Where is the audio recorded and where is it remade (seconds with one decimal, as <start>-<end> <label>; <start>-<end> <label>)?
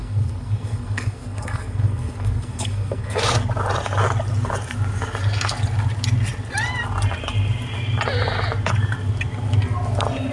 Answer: 0.0-3.2 remade; 3.2-10.3 recorded